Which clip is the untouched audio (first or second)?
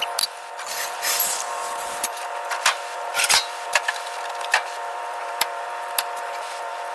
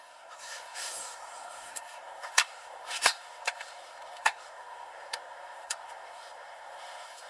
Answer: first